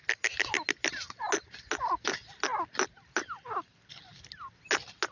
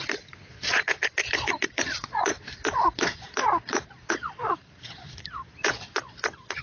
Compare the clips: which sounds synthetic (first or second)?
second